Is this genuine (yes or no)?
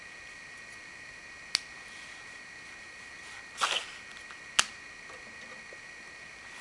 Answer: yes